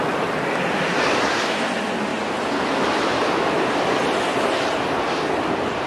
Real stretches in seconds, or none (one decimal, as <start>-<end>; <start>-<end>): 0.0-5.9